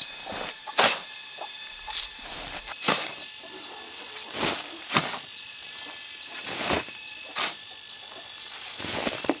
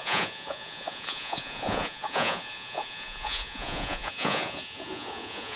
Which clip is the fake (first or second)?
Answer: second